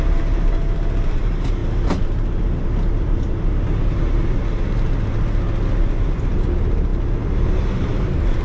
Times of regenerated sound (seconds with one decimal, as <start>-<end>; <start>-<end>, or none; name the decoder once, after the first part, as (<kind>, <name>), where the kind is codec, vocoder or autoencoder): none